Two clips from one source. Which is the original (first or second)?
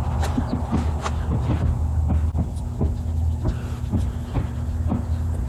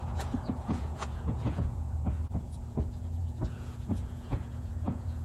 first